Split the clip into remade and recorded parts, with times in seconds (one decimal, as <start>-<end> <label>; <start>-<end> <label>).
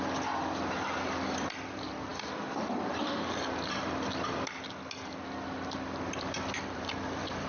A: 0.0-2.1 remade; 2.1-6.6 recorded; 6.6-7.5 remade